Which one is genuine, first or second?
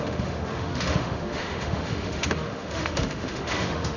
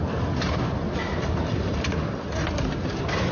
second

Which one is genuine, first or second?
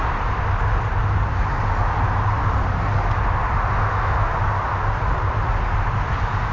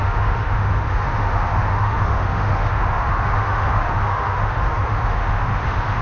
first